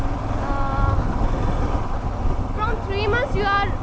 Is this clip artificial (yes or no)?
no